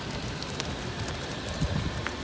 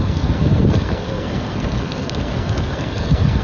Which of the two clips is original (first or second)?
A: first